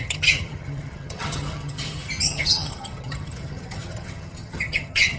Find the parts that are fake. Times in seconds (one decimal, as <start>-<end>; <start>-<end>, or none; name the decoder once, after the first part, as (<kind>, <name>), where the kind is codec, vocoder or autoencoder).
0.0-5.2 (vocoder, HiFi-GAN)